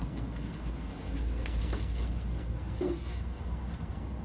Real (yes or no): no